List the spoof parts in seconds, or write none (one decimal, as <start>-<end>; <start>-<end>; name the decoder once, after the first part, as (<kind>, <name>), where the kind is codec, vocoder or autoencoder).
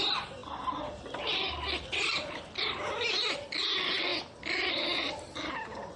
none